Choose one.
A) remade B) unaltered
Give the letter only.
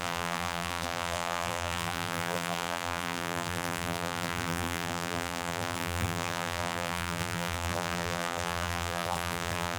A